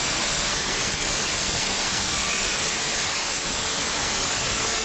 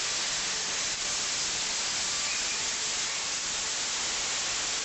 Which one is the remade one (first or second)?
first